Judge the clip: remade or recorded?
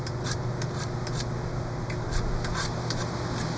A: recorded